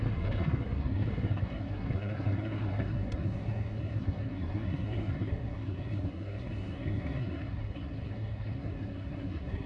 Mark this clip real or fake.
fake